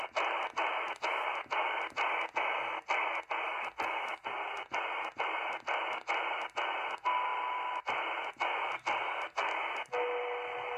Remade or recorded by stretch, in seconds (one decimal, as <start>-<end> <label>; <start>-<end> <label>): 0.0-10.8 recorded